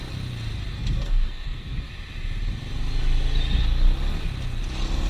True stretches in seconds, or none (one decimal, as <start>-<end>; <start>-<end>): 0.0-0.7; 1.9-5.1